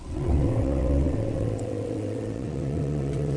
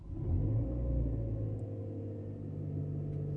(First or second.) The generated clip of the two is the first